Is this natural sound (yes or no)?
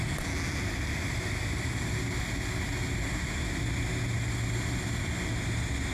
yes